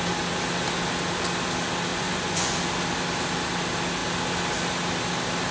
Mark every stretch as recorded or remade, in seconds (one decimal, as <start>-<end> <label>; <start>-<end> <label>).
0.0-1.9 recorded; 1.9-2.6 remade; 2.6-5.5 recorded